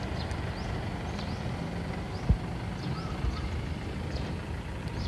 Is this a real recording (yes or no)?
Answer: yes